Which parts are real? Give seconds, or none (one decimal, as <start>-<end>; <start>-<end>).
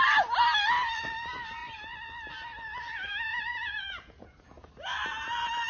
0.0-3.3; 4.7-5.7